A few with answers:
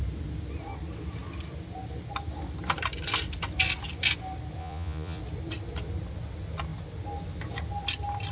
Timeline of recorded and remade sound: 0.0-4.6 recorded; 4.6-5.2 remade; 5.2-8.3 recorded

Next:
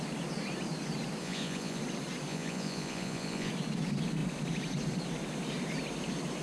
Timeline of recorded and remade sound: 0.0-1.2 recorded; 1.2-1.8 remade; 1.8-2.3 recorded; 2.3-3.5 remade; 3.5-6.4 recorded

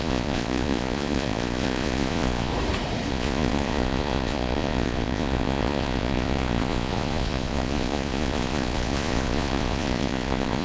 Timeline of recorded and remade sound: 0.0-2.5 remade; 2.5-3.1 recorded; 3.1-10.6 remade

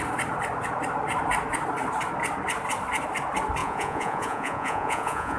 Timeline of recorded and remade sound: 0.0-3.6 recorded; 3.6-5.4 remade

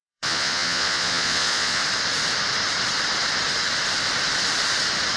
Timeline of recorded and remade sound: 0.0-1.8 remade; 1.8-5.2 recorded